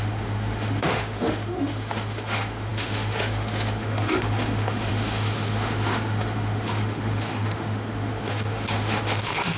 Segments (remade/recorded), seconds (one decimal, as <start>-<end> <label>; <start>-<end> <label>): 0.0-9.6 remade